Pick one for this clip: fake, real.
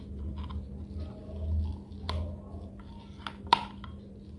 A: real